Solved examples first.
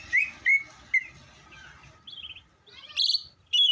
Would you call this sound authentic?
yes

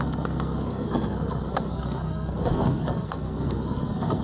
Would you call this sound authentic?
no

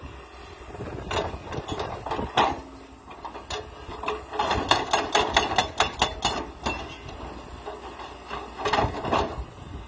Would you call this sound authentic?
yes